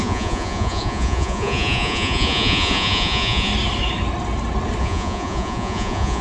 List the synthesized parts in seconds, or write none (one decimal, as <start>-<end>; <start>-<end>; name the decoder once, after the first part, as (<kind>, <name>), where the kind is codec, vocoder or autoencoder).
0.0-3.5 (vocoder, Vocos); 4.8-6.2